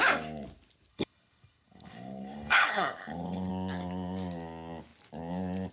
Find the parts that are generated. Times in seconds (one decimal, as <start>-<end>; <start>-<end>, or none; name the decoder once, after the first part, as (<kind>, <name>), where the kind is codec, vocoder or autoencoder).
0.9-3.5 (codec, HILCodec)